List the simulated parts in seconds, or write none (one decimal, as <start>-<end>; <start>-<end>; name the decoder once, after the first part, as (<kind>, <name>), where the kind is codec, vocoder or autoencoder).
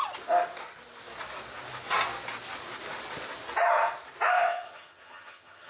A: 4.4-5.7 (vocoder, HiFi-GAN)